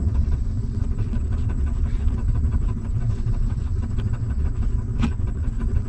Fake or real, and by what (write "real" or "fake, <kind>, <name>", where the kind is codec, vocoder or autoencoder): fake, vocoder, WaveNeXt